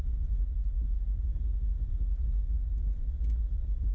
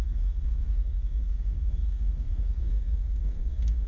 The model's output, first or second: second